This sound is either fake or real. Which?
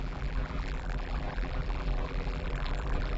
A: fake